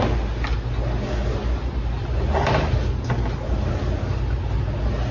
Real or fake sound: real